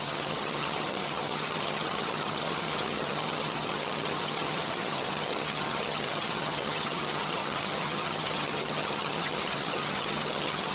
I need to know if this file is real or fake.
fake